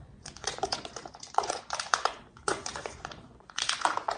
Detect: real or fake fake